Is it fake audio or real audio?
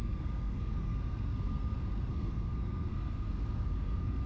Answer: fake